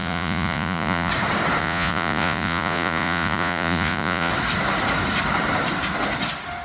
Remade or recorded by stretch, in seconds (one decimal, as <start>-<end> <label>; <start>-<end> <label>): 0.0-1.1 remade; 1.1-1.6 recorded; 1.6-4.3 remade; 4.3-6.6 recorded